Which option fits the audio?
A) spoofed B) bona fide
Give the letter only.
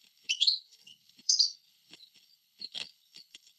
A